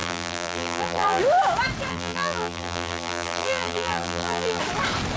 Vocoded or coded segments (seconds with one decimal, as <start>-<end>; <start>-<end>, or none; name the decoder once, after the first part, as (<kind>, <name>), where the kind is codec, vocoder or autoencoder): 0.0-1.2 (vocoder, BigVGAN v2); 1.9-4.6